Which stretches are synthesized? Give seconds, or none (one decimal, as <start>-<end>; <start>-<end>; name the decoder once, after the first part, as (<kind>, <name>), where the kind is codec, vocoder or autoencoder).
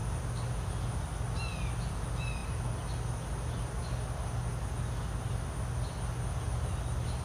none